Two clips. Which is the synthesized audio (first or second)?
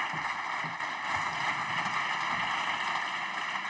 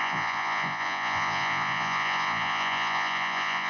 second